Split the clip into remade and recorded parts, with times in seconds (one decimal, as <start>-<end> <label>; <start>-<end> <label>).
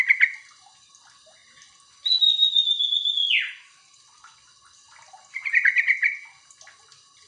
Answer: 0.0-7.3 recorded